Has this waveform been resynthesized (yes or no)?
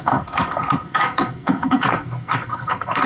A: yes